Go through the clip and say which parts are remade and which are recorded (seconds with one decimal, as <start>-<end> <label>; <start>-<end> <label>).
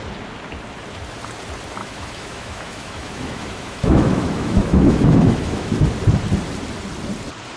0.0-1.8 recorded; 1.8-5.7 remade; 5.7-7.6 recorded